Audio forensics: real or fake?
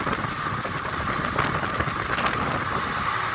real